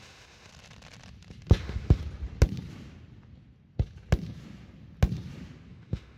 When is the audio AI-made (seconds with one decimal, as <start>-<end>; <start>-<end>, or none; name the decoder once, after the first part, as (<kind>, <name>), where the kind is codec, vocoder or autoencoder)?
0.0-0.5 (autoencoder, DAC-VAE); 1.6-2.0; 5.7-6.2